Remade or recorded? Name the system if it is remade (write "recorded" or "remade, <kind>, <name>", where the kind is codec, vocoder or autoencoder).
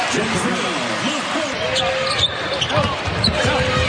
recorded